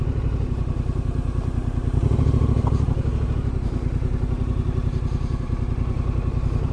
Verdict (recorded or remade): remade